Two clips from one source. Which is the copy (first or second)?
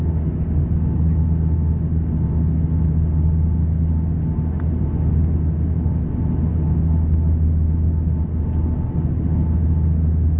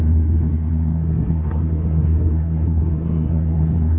second